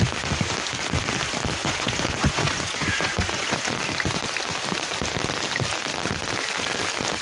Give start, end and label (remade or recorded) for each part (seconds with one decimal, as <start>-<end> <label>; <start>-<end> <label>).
0.0-1.6 recorded; 1.6-3.8 remade; 3.8-7.2 recorded